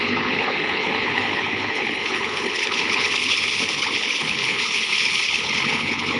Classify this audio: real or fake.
fake